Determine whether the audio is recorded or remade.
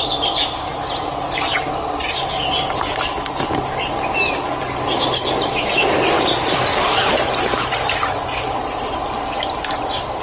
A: recorded